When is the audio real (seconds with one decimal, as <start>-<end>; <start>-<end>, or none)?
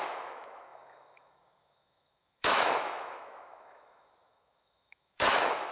none